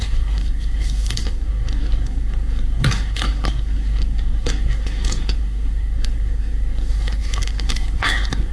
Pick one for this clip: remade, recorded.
remade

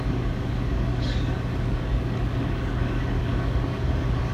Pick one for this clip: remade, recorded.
remade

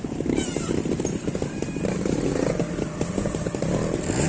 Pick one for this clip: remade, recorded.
recorded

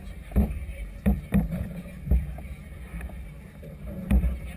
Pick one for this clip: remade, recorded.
remade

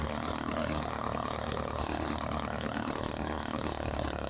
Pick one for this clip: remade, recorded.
remade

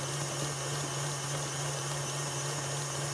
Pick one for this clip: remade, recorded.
recorded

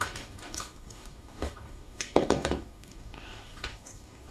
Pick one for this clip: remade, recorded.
remade